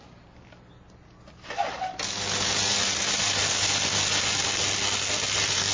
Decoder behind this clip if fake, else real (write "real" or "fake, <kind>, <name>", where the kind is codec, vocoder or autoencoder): real